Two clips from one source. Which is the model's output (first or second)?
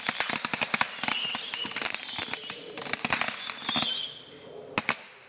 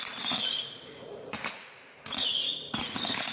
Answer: second